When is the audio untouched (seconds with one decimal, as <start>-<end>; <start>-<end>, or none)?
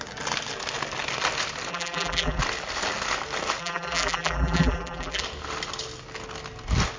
0.0-1.7; 2.4-3.6; 5.2-7.0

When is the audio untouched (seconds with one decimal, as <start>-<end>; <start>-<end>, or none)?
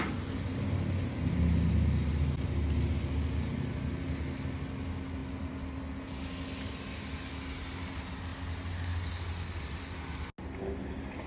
0.0-11.3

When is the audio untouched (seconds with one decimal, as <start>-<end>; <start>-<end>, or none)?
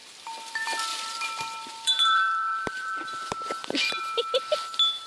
0.0-0.9; 4.0-5.1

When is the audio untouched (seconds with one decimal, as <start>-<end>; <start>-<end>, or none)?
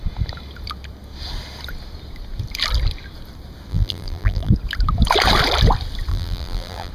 0.0-3.7; 4.5-6.1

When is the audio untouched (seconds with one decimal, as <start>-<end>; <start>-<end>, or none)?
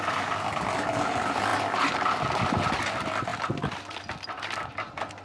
0.0-3.3; 4.0-5.2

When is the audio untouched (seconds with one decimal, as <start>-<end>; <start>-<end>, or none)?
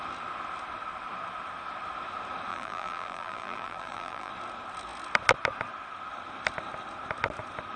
0.0-2.5; 4.3-7.8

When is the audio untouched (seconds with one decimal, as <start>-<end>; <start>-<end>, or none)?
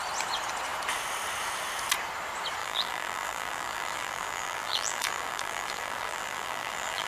0.0-2.6